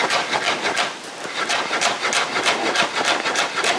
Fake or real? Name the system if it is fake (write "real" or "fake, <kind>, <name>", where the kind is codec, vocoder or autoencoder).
real